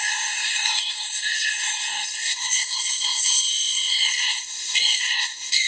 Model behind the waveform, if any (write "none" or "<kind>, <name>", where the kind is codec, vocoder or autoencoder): codec, SNAC